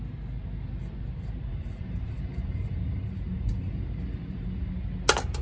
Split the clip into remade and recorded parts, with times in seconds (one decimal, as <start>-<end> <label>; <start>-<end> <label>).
0.0-1.5 recorded; 1.5-4.7 remade; 4.7-5.4 recorded